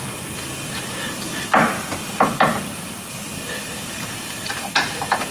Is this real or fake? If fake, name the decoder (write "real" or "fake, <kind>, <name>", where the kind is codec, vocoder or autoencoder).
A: real